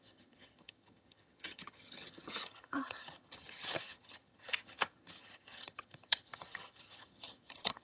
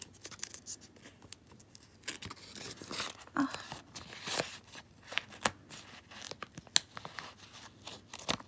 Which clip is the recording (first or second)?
second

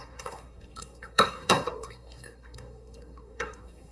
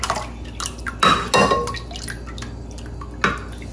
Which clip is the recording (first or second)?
second